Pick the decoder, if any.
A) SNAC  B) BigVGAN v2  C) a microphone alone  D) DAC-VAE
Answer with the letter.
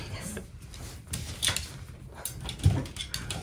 C